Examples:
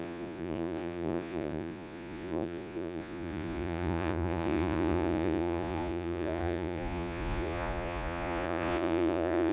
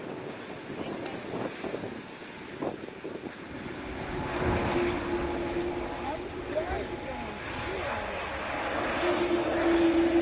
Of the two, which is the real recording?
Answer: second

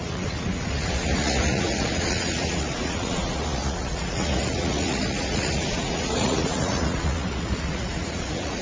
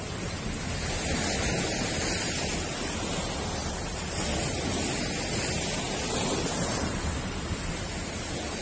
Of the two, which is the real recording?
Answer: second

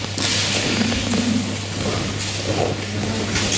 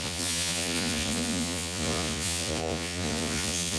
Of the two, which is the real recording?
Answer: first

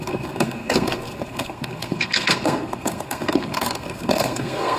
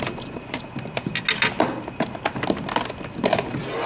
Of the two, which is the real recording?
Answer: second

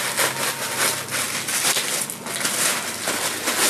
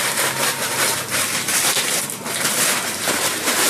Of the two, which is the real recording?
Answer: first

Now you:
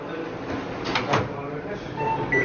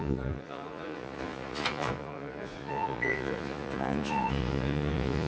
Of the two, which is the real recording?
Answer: first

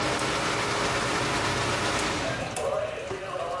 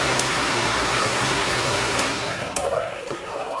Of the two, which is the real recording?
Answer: first